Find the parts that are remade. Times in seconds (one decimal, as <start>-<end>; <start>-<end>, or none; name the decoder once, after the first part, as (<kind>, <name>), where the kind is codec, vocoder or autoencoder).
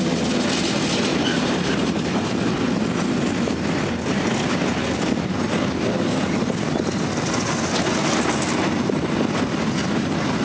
1.1-2.4 (vocoder, BigVGAN v2)